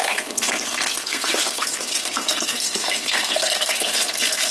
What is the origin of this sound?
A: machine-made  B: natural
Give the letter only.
A